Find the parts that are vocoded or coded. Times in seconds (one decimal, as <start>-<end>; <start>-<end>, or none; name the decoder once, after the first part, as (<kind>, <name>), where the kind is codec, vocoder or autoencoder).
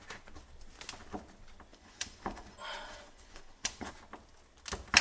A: 1.7-3.9 (vocoder, Vocos)